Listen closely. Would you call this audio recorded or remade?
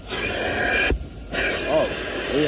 recorded